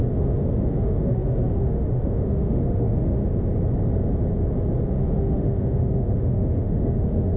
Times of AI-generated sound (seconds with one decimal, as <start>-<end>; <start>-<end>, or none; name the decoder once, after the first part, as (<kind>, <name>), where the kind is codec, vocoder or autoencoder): 0.0-3.2 (autoencoder, DAC-VAE); 4.9-7.4